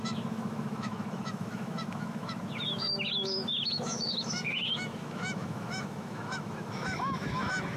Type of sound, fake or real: fake